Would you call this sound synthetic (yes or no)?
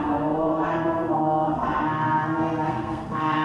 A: yes